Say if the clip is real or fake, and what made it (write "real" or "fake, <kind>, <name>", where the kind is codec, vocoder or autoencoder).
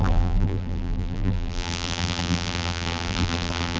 fake, vocoder, BigVGAN v2